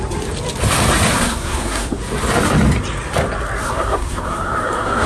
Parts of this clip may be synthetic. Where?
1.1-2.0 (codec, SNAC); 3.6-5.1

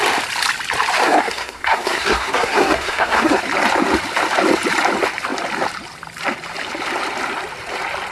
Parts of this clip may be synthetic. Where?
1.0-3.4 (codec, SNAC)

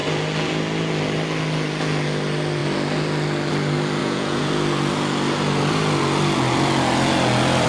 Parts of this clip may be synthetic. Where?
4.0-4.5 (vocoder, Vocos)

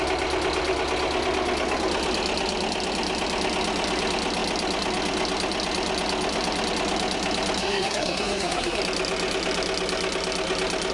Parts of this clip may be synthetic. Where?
7.6-8.8 (codec, SNAC)

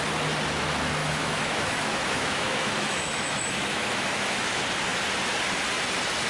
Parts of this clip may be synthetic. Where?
1.0-4.5 (autoencoder, DAC-VAE)

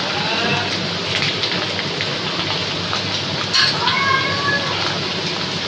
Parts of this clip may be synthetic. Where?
none

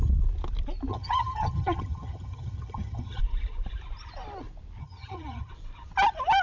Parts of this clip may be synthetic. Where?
0.9-3.2 (vocoder, HiFi-GAN); 4.8-5.5